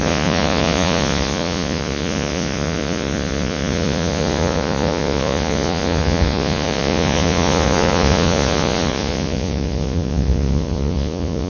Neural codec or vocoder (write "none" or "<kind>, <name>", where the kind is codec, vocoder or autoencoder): vocoder, Vocos